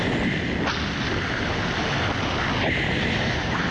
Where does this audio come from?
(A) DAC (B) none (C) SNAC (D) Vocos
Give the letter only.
B